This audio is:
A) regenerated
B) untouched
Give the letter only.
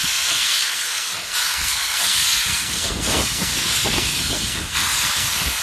A